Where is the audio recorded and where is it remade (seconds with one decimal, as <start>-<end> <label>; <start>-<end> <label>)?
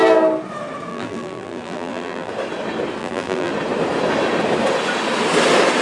0.0-0.9 recorded; 0.9-2.3 remade; 2.3-3.0 recorded; 3.0-3.5 remade; 3.5-5.8 recorded